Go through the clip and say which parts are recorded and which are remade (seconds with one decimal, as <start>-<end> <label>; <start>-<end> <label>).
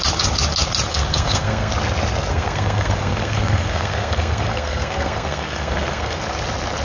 0.0-0.9 recorded; 0.9-1.7 remade; 1.7-2.3 recorded; 2.3-6.2 remade; 6.2-6.8 recorded